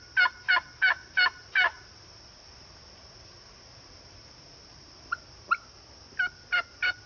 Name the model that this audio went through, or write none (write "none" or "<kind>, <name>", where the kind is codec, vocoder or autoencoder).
none